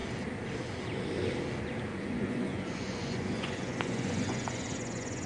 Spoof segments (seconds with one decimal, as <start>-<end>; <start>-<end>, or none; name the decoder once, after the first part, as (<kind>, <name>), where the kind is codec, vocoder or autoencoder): 1.9-5.3 (vocoder, Vocos)